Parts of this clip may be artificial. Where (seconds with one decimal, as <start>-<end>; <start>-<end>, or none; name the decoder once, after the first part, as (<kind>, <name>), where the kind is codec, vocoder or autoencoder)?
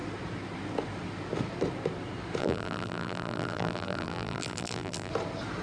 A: 2.4-5.1 (vocoder, BigVGAN v2)